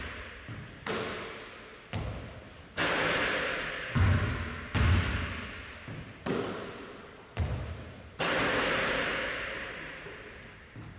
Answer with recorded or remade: recorded